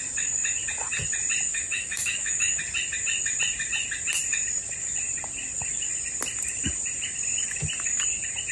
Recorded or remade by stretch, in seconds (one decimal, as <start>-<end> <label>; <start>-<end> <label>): 0.0-1.5 recorded; 1.5-2.6 remade; 2.6-8.5 recorded